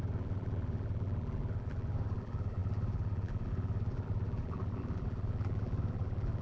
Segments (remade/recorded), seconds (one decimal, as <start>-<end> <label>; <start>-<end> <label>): 0.0-6.4 remade